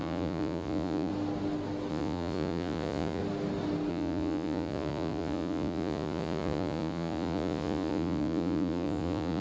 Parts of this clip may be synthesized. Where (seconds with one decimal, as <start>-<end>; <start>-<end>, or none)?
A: 0.0-1.1; 1.9-3.2; 3.9-9.4